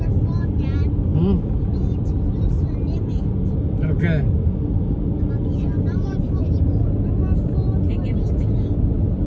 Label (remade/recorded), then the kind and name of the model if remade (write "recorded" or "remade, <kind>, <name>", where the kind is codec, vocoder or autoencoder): recorded